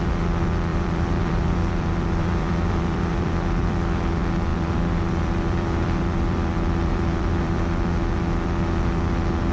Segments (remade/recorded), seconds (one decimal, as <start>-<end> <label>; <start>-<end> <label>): 0.0-0.7 recorded; 0.7-4.0 remade; 4.0-4.5 recorded; 4.5-7.6 remade; 7.6-9.5 recorded